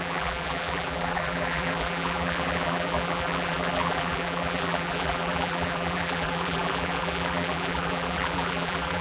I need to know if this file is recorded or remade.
remade